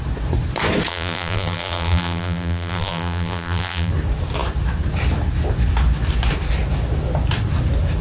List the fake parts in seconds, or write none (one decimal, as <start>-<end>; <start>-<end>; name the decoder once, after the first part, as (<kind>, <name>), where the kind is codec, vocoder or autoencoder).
0.9-3.9 (vocoder, BigVGAN v2)

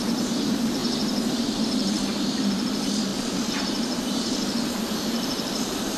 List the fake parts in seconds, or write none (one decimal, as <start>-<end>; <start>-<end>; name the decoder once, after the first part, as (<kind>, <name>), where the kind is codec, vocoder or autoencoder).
0.0-6.0 (vocoder, BigVGAN v2)

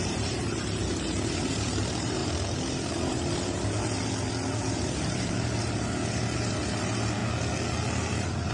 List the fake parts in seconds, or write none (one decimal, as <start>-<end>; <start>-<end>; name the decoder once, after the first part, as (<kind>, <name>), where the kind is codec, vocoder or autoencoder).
0.0-7.2 (vocoder, BigVGAN v2); 8.1-8.5

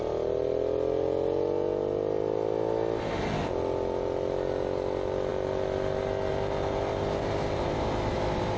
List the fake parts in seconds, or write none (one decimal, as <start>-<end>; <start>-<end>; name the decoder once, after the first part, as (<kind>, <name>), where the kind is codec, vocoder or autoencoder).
none